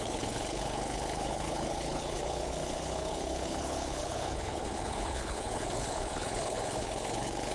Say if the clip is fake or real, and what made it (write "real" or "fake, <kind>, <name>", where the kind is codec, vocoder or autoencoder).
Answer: fake, codec, HILCodec